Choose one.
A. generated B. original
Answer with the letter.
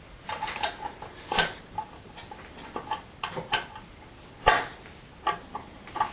B